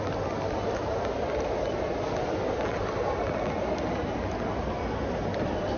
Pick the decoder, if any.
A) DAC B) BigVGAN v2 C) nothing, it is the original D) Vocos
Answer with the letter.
C